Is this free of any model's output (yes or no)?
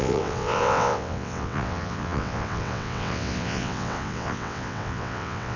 no